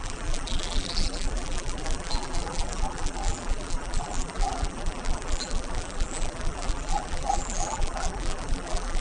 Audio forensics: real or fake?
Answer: fake